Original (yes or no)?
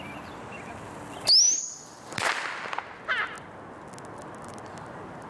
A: yes